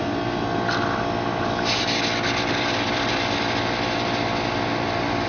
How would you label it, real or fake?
real